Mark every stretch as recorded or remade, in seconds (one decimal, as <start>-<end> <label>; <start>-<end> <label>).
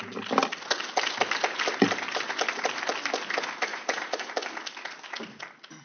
0.0-3.7 recorded; 3.7-4.3 remade; 4.3-5.8 recorded